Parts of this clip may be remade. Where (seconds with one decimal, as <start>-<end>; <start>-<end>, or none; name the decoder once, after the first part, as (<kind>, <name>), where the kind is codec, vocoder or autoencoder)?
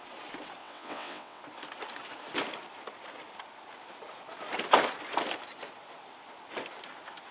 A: 0.6-1.4 (vocoder, WaveNeXt)